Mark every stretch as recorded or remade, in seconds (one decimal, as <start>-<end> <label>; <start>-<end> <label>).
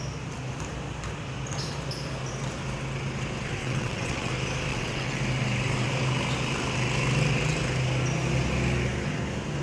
0.0-3.6 recorded; 3.6-4.3 remade; 4.3-4.7 recorded; 4.7-5.2 remade; 5.2-9.6 recorded